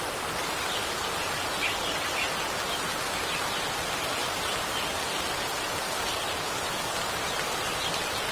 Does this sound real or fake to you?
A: real